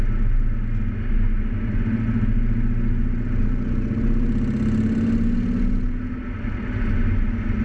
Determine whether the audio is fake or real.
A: real